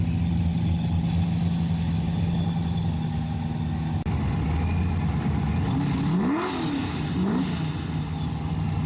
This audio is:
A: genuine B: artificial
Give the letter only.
A